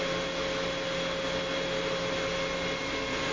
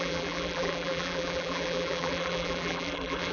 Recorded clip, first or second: first